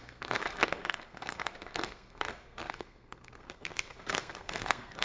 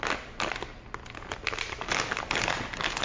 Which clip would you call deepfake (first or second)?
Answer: first